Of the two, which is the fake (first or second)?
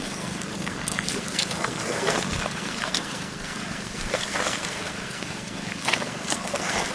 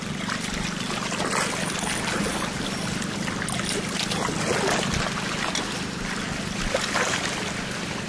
first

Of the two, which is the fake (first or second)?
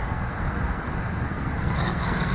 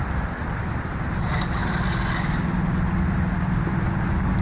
first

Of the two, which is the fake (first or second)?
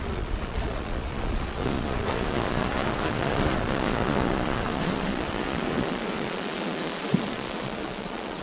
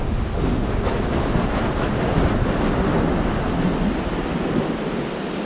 first